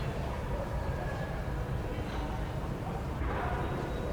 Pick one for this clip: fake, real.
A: fake